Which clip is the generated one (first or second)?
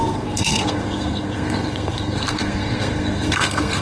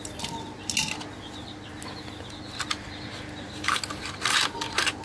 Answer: first